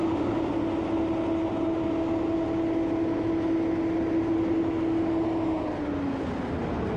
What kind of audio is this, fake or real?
real